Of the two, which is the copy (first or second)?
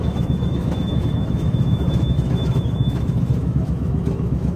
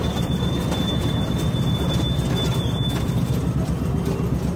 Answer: first